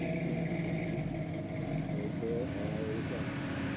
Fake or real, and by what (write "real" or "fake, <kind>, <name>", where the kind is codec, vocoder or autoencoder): real